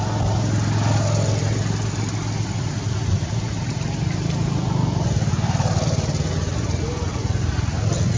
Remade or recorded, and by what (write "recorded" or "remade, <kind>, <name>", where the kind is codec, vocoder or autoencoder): recorded